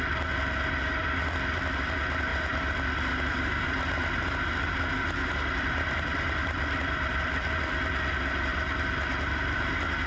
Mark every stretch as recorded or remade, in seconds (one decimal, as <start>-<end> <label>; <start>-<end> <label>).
0.0-2.3 recorded; 2.3-7.5 remade; 7.5-8.5 recorded; 8.5-9.6 remade; 9.6-10.1 recorded

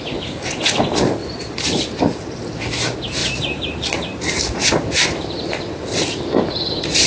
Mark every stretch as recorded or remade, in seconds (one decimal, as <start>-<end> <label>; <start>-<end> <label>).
0.0-1.2 recorded; 1.2-2.0 remade; 2.0-3.2 recorded; 3.2-5.7 remade; 5.7-7.1 recorded

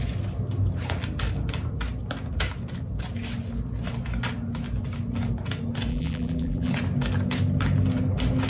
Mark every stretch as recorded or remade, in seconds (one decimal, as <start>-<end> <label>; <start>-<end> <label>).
0.0-5.9 recorded; 5.9-6.7 remade; 6.7-8.5 recorded

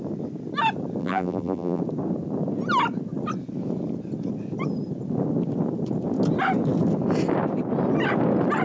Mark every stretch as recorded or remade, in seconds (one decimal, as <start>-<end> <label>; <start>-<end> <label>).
0.0-1.0 recorded; 1.0-1.8 remade; 1.8-8.6 recorded

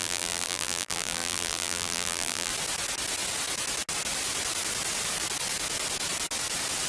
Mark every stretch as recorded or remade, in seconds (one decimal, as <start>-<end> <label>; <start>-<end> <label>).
0.0-2.5 remade; 2.5-6.9 recorded

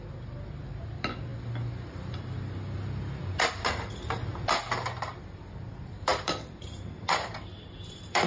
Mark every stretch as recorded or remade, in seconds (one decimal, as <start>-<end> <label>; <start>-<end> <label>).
0.0-6.1 recorded; 6.1-8.3 remade

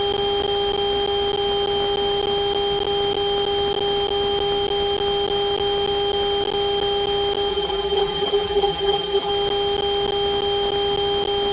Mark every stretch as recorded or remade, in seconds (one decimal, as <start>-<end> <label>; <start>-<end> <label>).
0.0-7.5 recorded; 7.5-9.3 remade; 9.3-11.5 recorded

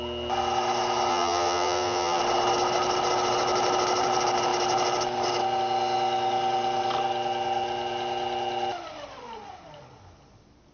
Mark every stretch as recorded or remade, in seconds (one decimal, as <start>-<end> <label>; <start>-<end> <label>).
0.0-1.1 recorded; 1.1-2.2 remade; 2.2-10.7 recorded